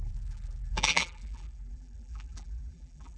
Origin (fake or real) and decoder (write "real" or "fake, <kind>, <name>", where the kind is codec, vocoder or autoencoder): fake, vocoder, BigVGAN v2